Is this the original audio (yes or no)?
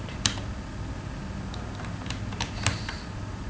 yes